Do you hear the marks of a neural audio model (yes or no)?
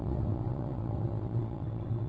yes